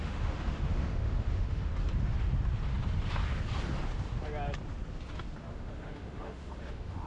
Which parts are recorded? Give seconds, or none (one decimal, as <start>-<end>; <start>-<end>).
1.7-5.5